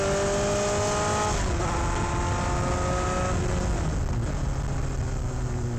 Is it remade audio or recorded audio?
recorded